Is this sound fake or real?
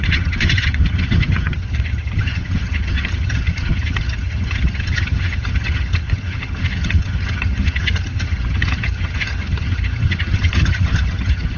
fake